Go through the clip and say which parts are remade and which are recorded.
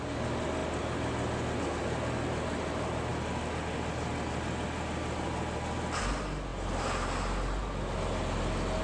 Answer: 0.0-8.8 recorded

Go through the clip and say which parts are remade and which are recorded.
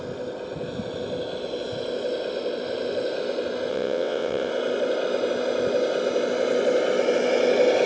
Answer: 0.0-3.7 recorded; 3.7-4.5 remade; 4.5-7.9 recorded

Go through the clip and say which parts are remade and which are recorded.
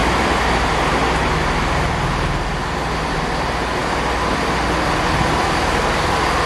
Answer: 0.0-6.5 recorded